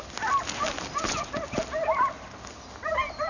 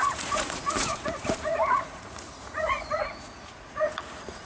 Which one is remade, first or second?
second